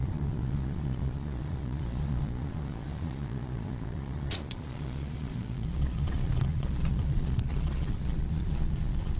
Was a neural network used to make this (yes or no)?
yes